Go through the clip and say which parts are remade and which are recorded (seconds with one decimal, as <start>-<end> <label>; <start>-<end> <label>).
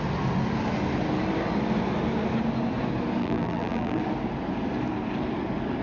0.0-3.2 recorded; 3.2-4.0 remade; 4.0-5.8 recorded